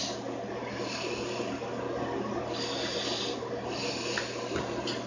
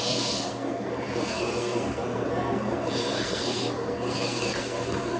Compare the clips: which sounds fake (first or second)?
second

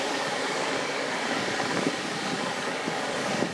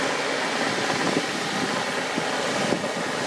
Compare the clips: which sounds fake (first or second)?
first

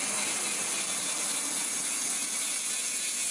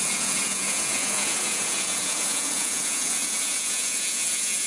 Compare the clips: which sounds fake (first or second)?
second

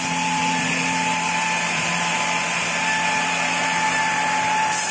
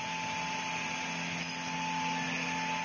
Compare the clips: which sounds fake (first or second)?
first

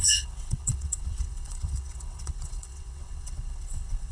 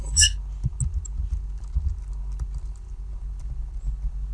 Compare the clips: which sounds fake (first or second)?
first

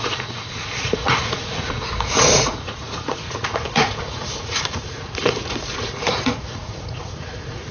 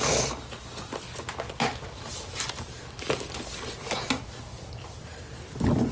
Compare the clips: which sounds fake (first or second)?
first